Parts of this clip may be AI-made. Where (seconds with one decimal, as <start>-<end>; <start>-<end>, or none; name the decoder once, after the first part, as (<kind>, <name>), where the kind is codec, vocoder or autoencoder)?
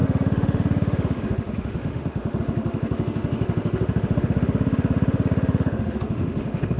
0.0-6.8 (autoencoder, DAC-VAE)